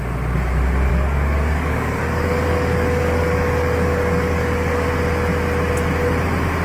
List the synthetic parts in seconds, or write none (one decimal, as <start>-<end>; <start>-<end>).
0.9-4.9